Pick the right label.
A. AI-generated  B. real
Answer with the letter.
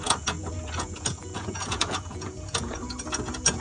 A